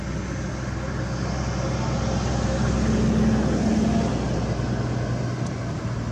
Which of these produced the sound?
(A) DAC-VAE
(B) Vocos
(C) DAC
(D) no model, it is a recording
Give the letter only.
D